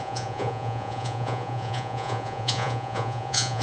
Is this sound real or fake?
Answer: fake